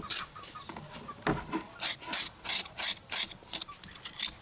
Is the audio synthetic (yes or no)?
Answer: no